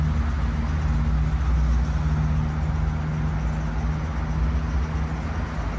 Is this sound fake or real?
real